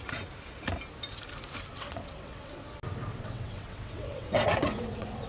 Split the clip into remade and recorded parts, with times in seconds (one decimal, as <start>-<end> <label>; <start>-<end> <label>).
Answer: 0.0-1.7 recorded; 1.7-2.5 remade; 2.5-3.1 recorded; 3.1-5.3 remade